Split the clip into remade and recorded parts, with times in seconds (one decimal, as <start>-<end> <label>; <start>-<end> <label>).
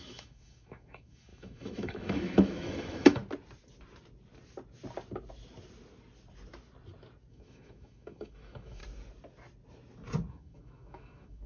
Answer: 0.0-3.2 remade; 3.2-7.3 recorded; 7.3-8.8 remade; 8.8-10.3 recorded; 10.3-11.5 remade